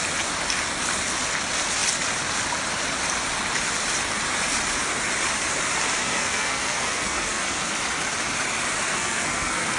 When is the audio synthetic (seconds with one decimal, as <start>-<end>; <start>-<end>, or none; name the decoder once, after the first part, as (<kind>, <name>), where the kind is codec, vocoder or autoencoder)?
6.0-7.7 (codec, SNAC); 8.9-9.8